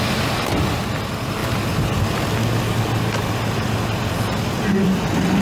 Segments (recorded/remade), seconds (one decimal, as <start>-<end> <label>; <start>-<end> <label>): 0.0-5.4 recorded